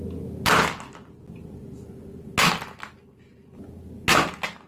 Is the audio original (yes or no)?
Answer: yes